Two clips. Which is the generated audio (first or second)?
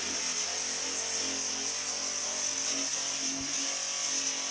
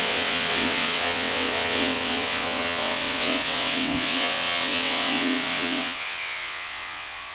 second